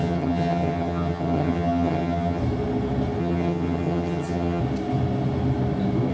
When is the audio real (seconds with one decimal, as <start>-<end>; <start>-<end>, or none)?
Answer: 2.4-3.2; 4.6-6.1